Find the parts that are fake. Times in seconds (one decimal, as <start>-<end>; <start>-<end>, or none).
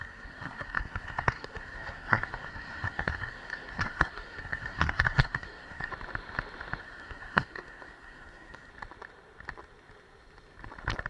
0.0-5.9; 6.8-8.7